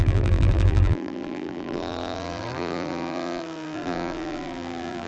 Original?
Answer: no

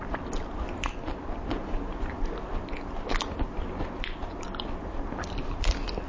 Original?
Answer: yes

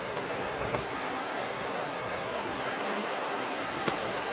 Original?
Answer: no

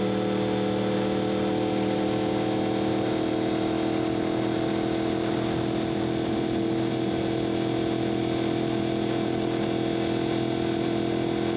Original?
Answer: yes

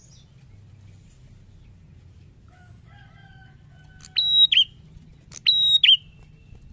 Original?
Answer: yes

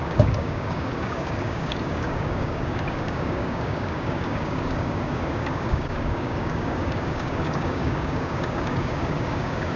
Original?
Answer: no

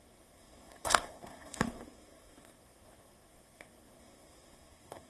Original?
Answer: no